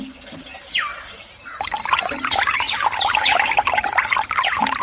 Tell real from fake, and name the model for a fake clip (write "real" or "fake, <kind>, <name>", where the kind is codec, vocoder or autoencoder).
real